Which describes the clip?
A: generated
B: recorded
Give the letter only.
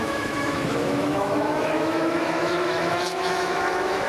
A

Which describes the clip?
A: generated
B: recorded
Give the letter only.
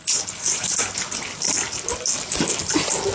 B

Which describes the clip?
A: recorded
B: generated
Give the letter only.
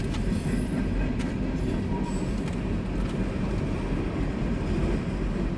A